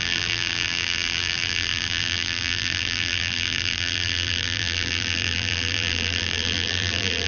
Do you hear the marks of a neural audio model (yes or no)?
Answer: yes